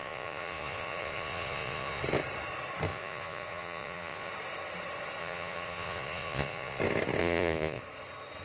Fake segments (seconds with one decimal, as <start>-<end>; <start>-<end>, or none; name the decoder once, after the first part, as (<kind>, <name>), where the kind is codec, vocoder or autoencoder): 0.0-2.0 (vocoder, Vocos); 2.9-4.3; 5.2-6.8; 7.2-7.8